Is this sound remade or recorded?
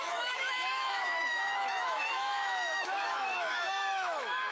remade